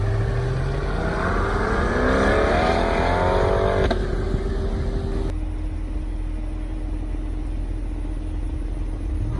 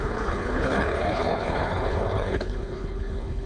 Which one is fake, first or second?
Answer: second